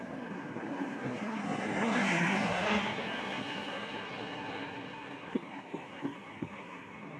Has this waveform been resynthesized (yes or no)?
yes